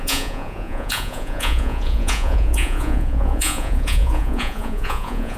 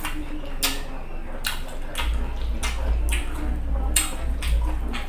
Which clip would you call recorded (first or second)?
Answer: second